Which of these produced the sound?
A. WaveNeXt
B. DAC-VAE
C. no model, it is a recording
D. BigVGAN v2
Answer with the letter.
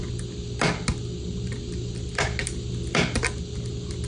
C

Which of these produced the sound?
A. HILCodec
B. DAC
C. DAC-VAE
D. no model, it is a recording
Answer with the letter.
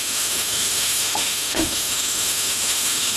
C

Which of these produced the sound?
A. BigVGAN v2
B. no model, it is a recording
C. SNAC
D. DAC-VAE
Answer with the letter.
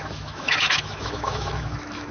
D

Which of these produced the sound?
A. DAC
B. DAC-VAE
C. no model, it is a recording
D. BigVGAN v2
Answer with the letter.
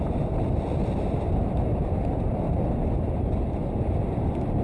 C